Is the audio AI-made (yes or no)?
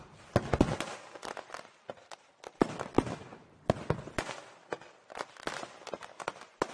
no